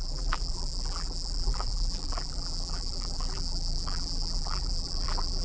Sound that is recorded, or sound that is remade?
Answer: remade